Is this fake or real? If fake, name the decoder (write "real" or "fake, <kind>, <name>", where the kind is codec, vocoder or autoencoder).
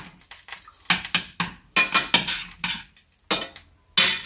real